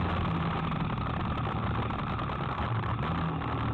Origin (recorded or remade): remade